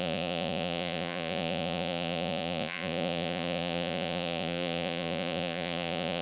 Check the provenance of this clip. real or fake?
fake